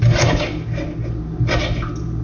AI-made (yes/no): no